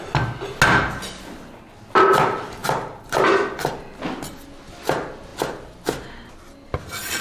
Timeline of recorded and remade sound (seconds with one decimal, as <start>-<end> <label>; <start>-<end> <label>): 0.0-7.2 recorded

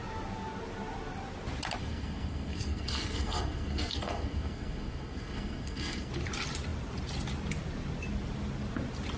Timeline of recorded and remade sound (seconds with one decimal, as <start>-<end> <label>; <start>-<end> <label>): 0.0-1.8 recorded; 1.8-6.1 remade; 6.1-9.2 recorded

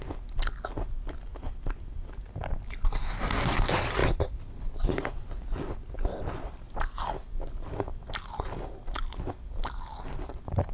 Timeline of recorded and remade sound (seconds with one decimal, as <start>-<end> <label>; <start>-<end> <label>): 0.0-10.7 recorded

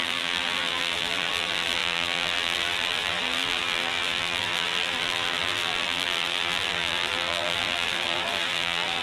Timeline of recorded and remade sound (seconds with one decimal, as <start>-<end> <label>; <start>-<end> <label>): 0.0-9.0 remade

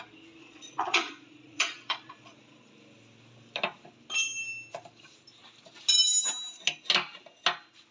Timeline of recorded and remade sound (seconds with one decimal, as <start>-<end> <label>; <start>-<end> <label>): 0.0-0.4 recorded; 0.4-2.7 remade; 2.7-7.9 recorded

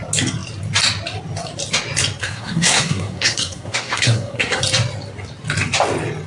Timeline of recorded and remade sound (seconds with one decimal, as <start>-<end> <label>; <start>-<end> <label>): 0.0-2.2 recorded; 2.2-4.6 remade; 4.6-6.3 recorded

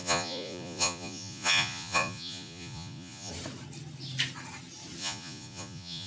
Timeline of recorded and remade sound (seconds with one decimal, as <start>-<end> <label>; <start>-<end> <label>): 0.0-3.3 remade; 3.3-5.0 recorded; 5.0-6.1 remade